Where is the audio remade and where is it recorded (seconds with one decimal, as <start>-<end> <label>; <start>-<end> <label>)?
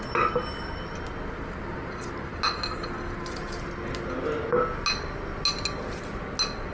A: 0.0-6.7 recorded